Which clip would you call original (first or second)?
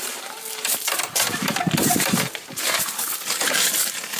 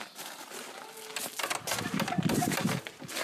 second